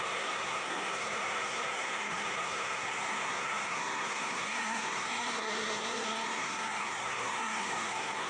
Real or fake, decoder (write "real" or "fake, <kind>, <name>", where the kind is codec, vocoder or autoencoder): fake, codec, SNAC